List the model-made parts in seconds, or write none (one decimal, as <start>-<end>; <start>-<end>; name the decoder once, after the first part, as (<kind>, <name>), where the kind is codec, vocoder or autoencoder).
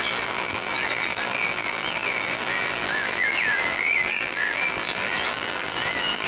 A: 0.0-6.3 (vocoder, BigVGAN v2)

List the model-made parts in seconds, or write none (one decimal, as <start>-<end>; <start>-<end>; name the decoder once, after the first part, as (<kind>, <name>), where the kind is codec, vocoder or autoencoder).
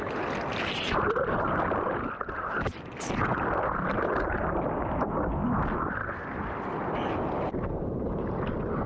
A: none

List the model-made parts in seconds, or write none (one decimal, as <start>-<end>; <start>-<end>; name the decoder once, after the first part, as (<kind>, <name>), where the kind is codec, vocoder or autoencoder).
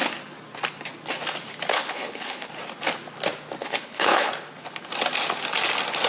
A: 1.7-2.5 (codec, HILCodec); 3.6-4.3